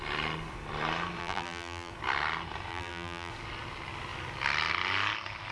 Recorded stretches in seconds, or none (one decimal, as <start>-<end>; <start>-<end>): 0.0-1.2; 1.9-2.7; 3.3-5.5